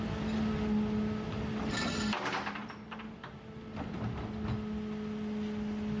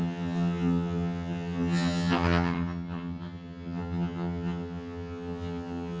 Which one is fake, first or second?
second